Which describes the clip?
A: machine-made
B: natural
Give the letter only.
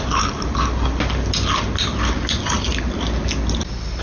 B